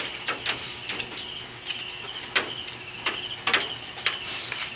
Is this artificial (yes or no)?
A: no